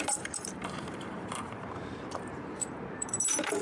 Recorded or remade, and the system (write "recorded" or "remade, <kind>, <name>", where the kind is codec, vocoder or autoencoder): remade, vocoder, BigVGAN v2